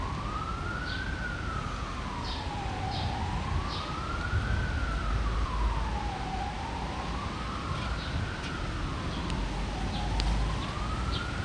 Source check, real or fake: real